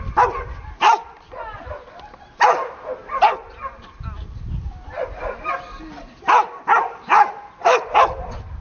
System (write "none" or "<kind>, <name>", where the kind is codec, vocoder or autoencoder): none